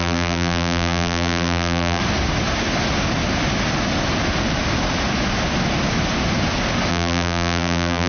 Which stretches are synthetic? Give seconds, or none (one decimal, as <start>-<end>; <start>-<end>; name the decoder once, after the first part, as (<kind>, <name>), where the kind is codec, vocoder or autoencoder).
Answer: 0.0-2.0 (vocoder, BigVGAN v2); 6.9-8.1